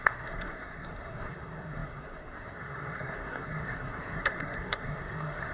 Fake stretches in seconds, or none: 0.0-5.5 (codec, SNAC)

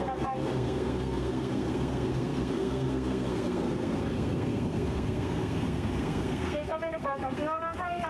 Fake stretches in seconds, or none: 0.0-8.1 (codec, SNAC)

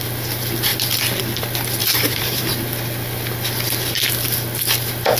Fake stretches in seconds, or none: 1.8-2.5 (vocoder, BigVGAN v2)

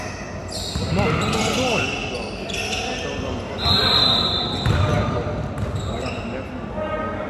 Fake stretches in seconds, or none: 0.4-0.9 (vocoder, BigVGAN v2); 2.0-3.0; 3.8-4.4; 4.9-6.2